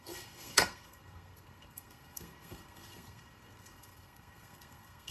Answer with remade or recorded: remade